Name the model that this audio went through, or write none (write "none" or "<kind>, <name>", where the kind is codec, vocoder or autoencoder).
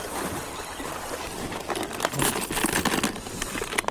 none